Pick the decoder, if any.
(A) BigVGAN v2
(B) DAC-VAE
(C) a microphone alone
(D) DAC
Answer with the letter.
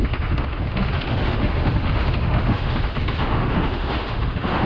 B